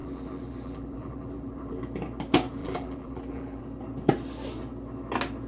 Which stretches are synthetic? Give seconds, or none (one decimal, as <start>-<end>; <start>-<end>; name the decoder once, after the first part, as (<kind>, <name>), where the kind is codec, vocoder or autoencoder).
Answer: 0.0-1.8 (vocoder, BigVGAN v2); 2.6-3.6